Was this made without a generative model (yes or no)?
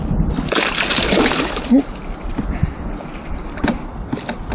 yes